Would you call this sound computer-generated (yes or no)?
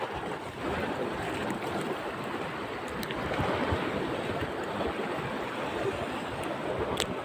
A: no